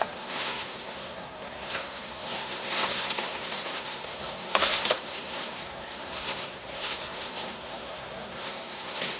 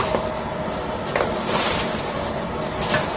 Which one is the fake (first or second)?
first